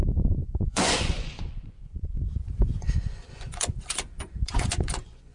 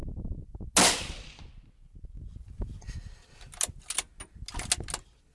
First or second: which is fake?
first